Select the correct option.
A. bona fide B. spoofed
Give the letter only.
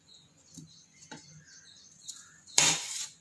B